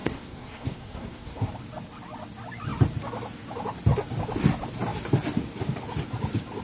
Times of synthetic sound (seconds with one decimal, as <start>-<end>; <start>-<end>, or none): 0.0-1.5